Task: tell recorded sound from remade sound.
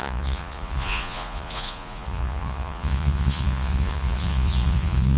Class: remade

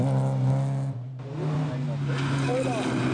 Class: recorded